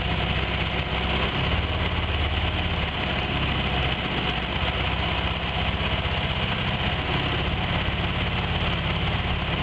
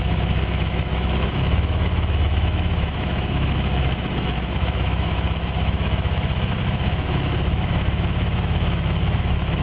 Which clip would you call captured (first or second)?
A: first